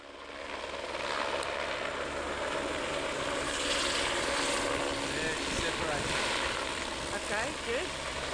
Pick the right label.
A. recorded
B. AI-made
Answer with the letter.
A